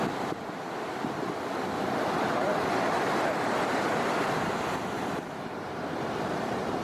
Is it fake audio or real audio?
fake